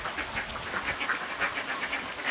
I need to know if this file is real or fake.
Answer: real